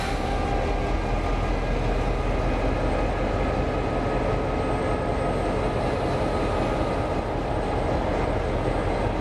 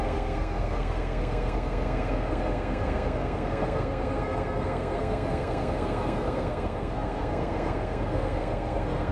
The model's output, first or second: second